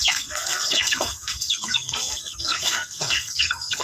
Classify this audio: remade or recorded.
remade